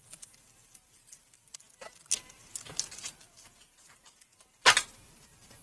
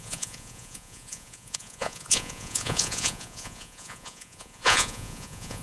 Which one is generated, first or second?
second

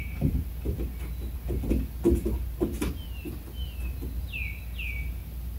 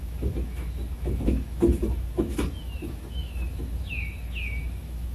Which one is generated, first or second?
second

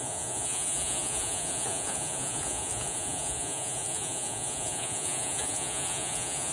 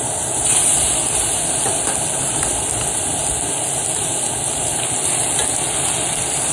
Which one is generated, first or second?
first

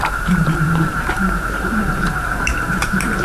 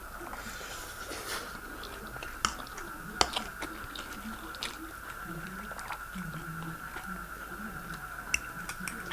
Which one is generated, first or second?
first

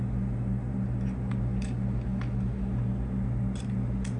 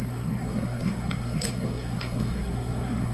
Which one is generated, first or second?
second